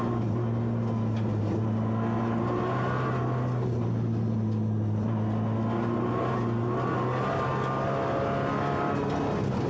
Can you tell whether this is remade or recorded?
recorded